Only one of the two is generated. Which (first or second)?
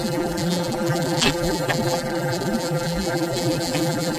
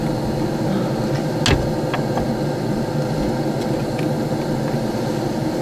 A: first